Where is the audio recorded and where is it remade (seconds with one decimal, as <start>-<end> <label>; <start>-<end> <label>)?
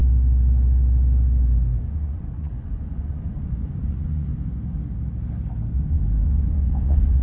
0.0-1.8 recorded; 1.8-4.3 remade; 4.3-5.9 recorded; 5.9-7.2 remade